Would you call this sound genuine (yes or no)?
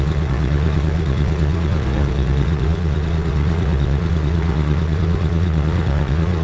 no